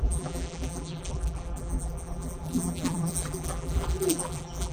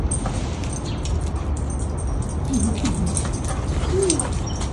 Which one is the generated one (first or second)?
first